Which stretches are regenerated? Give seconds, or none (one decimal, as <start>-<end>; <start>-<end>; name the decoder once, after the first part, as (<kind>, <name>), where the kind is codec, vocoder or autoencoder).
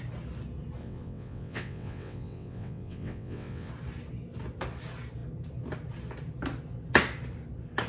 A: 0.8-3.7 (vocoder, WaveNeXt)